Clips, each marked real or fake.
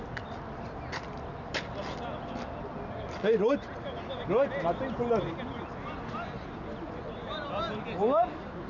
real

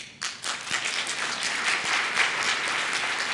real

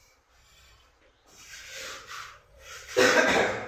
fake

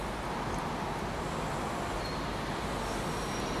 real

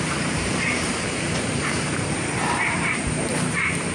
fake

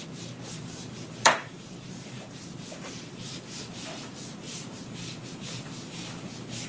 fake